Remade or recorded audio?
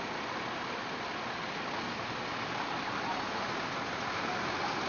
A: recorded